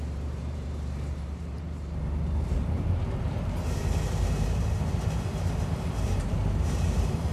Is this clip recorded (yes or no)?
no